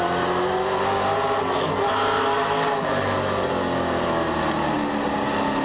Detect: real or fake real